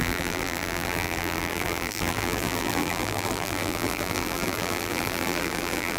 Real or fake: fake